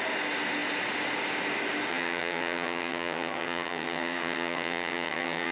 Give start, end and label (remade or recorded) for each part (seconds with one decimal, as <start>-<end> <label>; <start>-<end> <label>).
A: 0.0-1.9 recorded; 1.9-5.5 remade